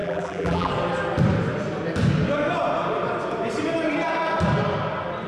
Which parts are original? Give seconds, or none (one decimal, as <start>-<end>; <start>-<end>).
0.7-5.3